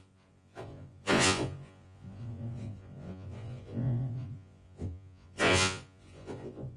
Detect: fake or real fake